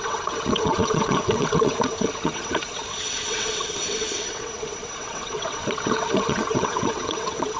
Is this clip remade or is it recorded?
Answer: remade